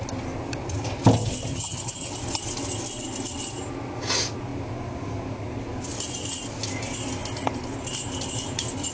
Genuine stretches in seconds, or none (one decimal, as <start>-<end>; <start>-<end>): 0.0-1.5; 2.1-8.9